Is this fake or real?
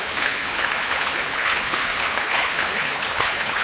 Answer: fake